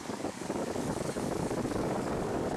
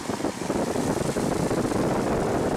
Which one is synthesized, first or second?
first